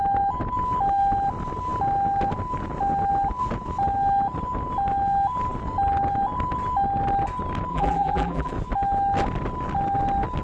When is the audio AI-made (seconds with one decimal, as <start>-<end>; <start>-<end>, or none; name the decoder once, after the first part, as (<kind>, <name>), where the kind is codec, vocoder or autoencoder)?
7.7-8.5 (vocoder, BigVGAN v2)